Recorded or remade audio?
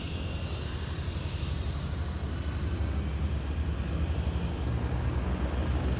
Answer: recorded